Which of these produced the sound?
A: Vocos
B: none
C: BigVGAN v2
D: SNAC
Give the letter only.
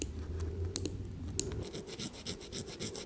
B